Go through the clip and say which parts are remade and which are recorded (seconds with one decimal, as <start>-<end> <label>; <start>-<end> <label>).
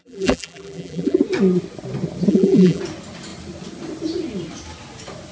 0.0-1.2 remade; 1.2-2.3 recorded; 2.3-2.8 remade; 2.8-5.3 recorded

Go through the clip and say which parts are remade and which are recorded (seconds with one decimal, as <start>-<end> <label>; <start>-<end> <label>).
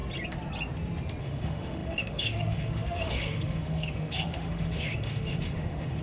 0.0-1.2 recorded; 1.2-6.0 remade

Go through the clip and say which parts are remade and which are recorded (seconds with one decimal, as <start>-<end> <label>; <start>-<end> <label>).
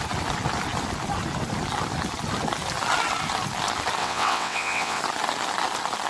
0.0-4.0 recorded; 4.0-5.0 remade; 5.0-6.1 recorded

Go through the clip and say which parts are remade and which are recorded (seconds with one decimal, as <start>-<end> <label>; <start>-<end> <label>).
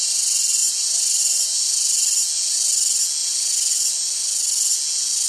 0.0-5.3 recorded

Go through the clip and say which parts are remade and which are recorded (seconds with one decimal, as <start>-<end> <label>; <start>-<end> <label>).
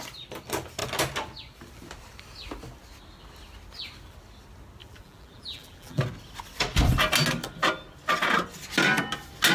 0.0-4.8 recorded; 4.8-6.0 remade; 6.0-9.5 recorded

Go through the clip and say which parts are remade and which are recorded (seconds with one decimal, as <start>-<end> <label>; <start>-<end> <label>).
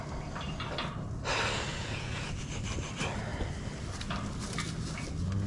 0.0-1.7 recorded; 1.7-2.4 remade; 2.4-5.5 recorded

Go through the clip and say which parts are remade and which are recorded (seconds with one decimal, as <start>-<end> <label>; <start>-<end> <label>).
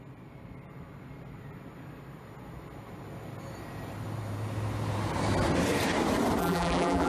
0.0-6.4 recorded; 6.4-7.1 remade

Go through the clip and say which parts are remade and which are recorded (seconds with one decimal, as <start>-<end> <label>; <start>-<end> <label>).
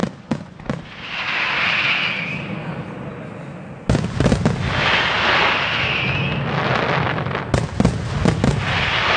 0.0-0.7 remade; 0.7-9.2 recorded